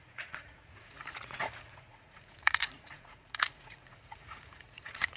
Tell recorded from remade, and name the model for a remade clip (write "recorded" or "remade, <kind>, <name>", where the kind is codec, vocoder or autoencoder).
remade, vocoder, Vocos